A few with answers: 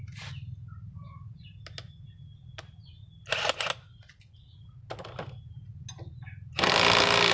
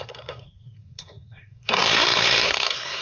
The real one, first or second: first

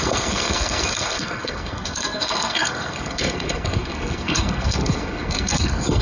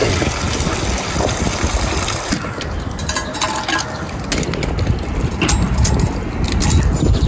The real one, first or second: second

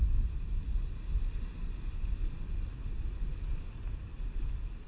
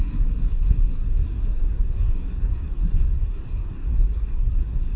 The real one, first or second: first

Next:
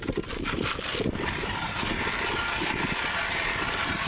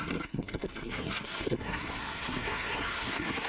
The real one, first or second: first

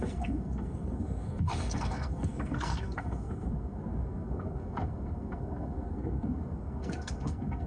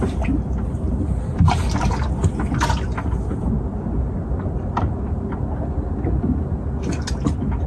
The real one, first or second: second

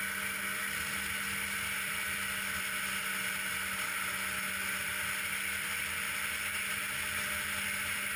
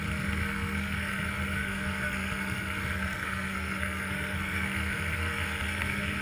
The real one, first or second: first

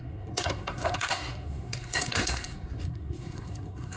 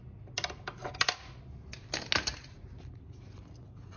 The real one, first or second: second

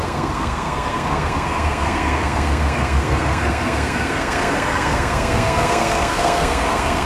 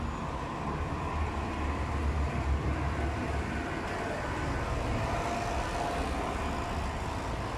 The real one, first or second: second